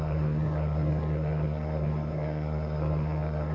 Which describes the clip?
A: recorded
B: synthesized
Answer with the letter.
B